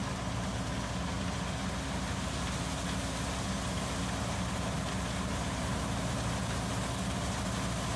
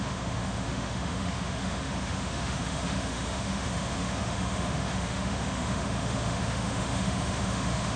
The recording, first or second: first